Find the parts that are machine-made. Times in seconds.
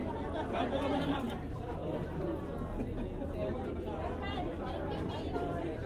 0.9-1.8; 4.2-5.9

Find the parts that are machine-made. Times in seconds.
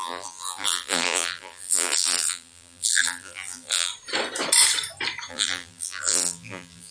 0.0-3.9; 5.3-6.9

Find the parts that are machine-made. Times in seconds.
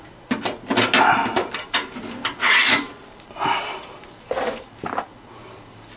1.4-5.0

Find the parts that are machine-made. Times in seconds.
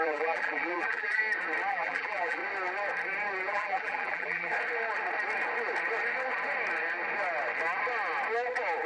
0.0-1.2; 1.7-2.4; 3.5-4.5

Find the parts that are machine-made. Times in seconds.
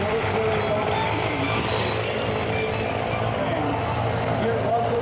none